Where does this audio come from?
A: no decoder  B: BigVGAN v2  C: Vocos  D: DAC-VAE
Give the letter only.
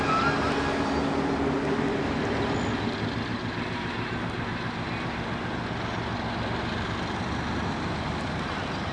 A